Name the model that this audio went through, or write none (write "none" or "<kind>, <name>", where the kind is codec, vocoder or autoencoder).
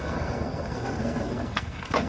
codec, SNAC